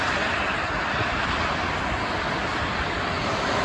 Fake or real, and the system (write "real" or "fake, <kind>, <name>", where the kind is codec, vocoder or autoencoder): real